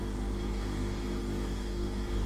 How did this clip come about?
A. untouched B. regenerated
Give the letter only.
B